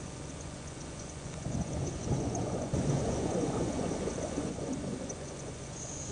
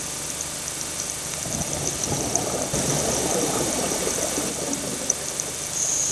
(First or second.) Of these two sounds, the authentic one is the second